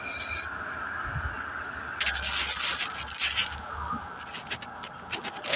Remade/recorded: recorded